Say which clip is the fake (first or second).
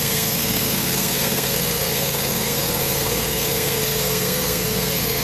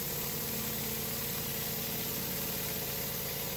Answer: first